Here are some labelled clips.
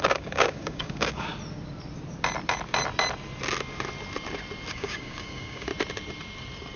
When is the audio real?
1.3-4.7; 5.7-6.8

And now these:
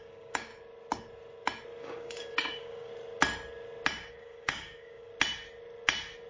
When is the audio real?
0.5-1.8; 2.9-4.1; 5.1-6.3

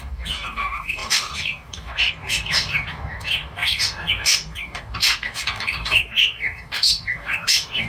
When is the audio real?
none

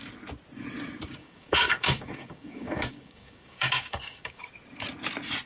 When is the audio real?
0.0-1.2; 4.5-5.5